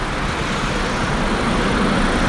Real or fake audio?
real